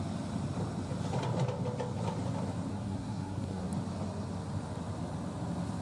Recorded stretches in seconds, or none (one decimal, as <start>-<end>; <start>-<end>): 0.0-2.7; 3.7-5.8